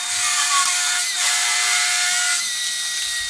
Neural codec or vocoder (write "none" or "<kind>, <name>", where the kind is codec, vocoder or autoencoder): none